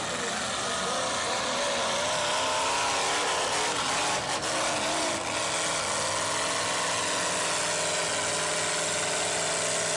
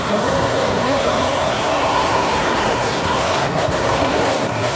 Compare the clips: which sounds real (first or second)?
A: first